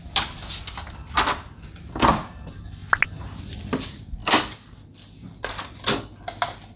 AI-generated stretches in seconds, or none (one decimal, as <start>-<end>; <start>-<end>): none